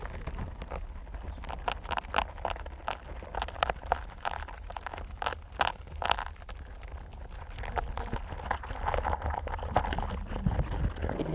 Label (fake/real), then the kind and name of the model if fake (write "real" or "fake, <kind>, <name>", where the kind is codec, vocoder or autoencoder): real